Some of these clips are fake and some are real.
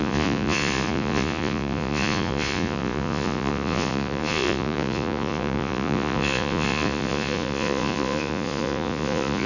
fake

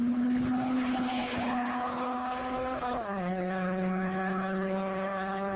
fake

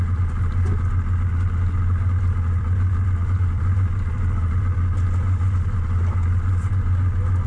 real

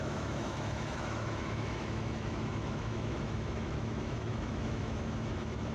fake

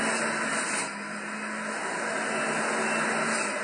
real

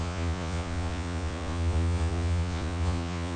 fake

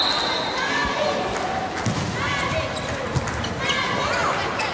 real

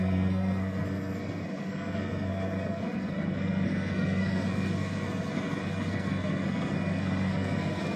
fake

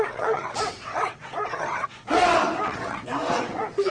fake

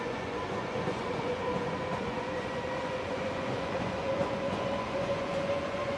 fake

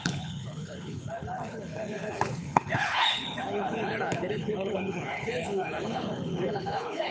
fake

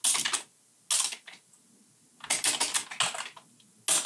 real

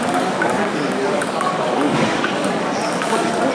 fake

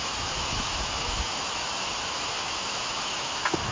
fake